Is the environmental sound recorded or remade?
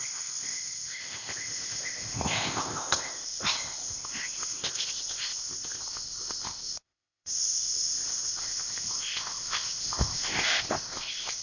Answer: remade